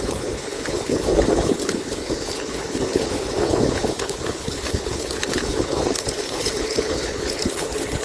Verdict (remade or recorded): remade